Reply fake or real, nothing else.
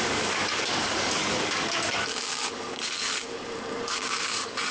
fake